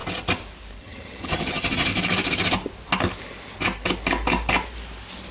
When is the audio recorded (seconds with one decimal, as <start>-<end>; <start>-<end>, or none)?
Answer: 0.0-0.8; 1.9-5.3